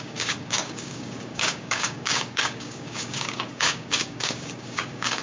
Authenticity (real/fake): fake